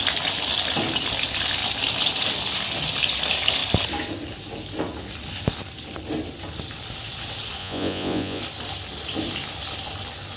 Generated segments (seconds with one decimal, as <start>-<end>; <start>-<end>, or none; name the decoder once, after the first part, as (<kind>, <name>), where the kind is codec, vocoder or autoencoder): 7.6-8.4 (vocoder, Vocos)